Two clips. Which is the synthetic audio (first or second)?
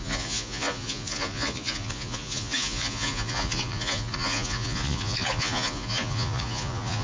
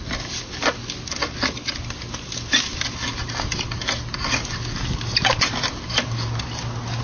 first